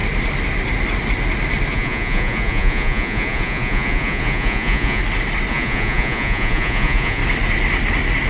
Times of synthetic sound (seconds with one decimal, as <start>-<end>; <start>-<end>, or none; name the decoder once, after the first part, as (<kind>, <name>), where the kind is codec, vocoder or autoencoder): 1.7-5.0 (vocoder, Vocos); 5.5-7.2